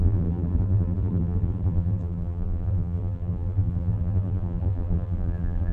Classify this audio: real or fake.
fake